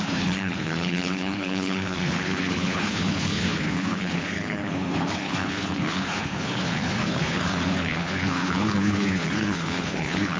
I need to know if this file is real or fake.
fake